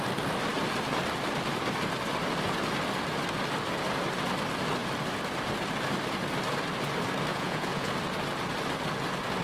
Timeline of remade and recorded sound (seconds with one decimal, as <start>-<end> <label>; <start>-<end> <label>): 0.0-7.3 recorded; 7.3-7.9 remade; 7.9-9.4 recorded